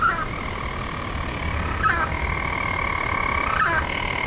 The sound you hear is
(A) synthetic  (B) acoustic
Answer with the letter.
B